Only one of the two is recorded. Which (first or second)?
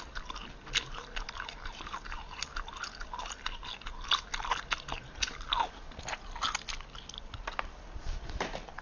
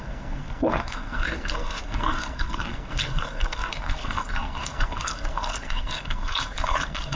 first